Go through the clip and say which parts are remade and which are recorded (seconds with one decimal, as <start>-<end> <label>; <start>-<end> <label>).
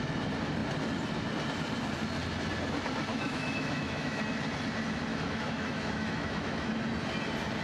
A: 0.0-3.1 recorded; 3.1-4.2 remade; 4.2-5.1 recorded; 5.1-6.7 remade; 6.7-7.6 recorded